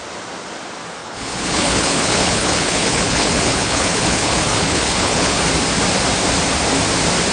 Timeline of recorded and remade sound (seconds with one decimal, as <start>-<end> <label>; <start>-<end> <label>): 0.0-1.0 recorded; 1.0-5.4 remade; 5.4-7.3 recorded